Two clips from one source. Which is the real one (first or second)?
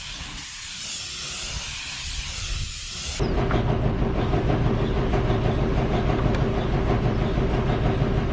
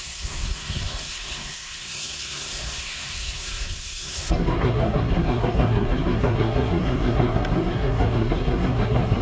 first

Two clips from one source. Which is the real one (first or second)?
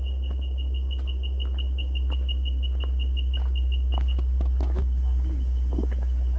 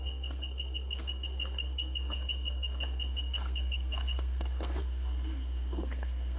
first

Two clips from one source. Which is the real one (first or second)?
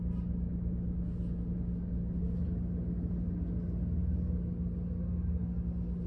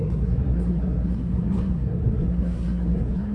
first